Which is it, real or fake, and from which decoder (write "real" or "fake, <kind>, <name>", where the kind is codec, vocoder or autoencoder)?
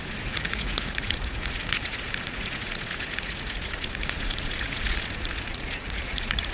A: fake, vocoder, Vocos